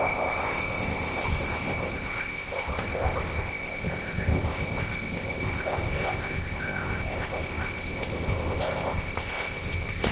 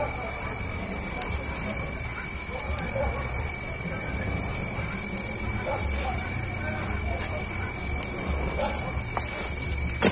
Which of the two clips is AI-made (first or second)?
first